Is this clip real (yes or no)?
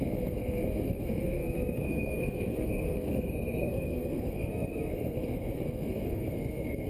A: no